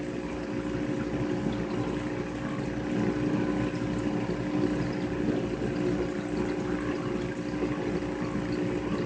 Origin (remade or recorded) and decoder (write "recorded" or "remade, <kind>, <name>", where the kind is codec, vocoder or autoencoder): recorded